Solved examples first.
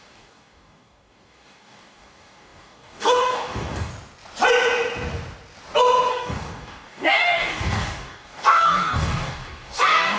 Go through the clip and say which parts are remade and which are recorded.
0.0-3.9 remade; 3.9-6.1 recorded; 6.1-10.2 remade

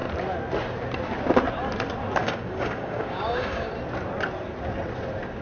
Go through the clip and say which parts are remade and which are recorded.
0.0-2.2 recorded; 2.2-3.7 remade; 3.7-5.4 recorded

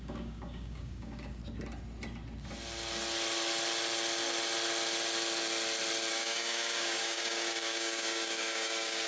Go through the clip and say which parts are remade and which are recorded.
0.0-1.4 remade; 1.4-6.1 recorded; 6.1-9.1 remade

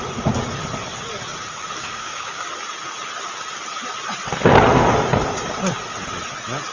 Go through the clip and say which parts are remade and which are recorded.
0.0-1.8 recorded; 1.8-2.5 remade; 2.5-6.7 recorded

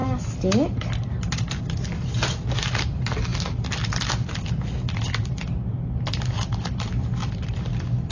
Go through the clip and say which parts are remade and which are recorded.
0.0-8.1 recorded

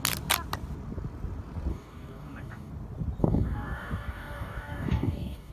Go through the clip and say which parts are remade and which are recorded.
0.0-1.7 recorded; 1.7-2.7 remade; 2.7-3.2 recorded; 3.2-5.5 remade

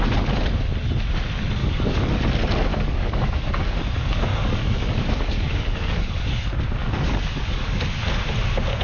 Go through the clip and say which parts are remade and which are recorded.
0.0-1.6 recorded; 1.6-2.1 remade; 2.1-2.7 recorded; 2.7-3.8 remade; 3.8-4.3 recorded; 4.3-6.2 remade; 6.2-6.8 recorded; 6.8-7.8 remade; 7.8-8.8 recorded

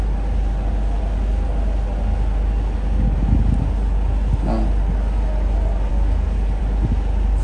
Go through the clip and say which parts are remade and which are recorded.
0.0-5.9 recorded; 5.9-6.6 remade; 6.6-7.4 recorded